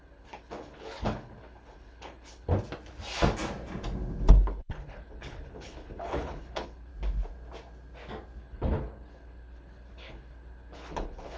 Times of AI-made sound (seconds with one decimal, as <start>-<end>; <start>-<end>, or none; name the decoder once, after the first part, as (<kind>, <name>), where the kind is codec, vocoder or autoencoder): 0.0-2.5 (codec, HILCodec); 4.3-6.9; 8.4-11.4